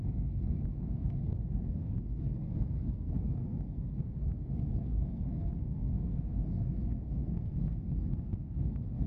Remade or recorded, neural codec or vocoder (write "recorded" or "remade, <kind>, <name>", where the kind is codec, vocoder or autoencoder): remade, codec, SNAC